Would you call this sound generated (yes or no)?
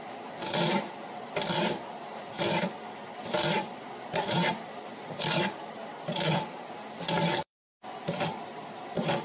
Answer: yes